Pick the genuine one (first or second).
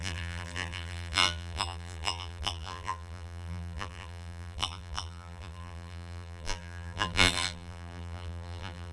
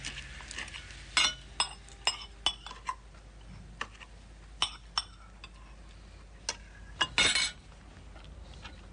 second